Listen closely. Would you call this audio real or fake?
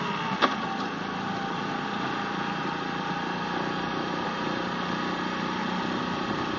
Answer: real